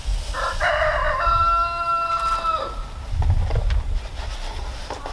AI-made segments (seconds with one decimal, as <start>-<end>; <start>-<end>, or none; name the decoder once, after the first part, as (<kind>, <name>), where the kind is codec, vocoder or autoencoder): none